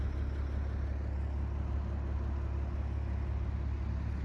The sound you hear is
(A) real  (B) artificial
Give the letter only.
A